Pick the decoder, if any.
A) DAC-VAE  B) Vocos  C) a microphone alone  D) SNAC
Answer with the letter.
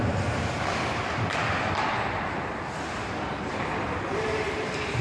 C